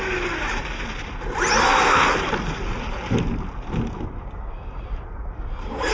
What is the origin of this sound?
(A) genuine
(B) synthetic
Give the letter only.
A